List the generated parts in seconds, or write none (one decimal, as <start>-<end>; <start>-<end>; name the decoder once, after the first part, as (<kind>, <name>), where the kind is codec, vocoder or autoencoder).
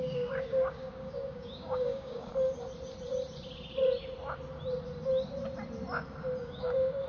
0.0-2.3 (codec, DAC); 6.4-7.1